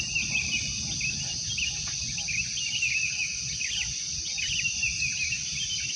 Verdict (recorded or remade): recorded